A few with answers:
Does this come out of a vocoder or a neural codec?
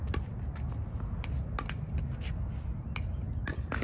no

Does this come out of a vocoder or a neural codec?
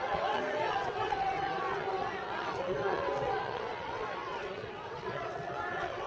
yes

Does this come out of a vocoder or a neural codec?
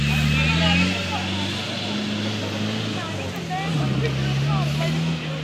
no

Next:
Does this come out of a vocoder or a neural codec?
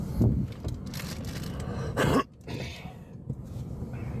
no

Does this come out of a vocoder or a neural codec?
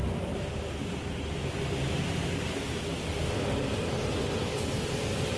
no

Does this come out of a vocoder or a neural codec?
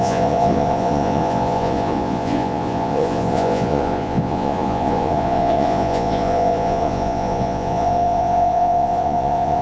yes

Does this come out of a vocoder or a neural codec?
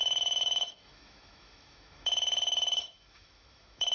yes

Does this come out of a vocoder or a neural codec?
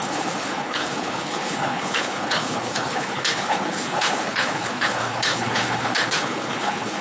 yes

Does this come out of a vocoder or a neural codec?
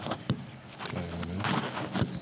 no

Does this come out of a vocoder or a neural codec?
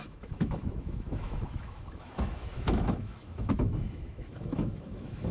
yes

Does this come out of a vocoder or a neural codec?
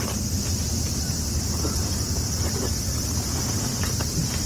no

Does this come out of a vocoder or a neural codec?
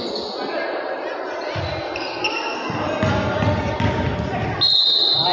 no